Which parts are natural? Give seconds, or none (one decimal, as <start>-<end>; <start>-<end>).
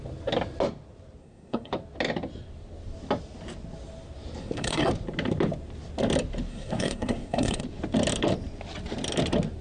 0.0-1.2; 1.7-4.4; 4.9-6.5; 7.6-9.6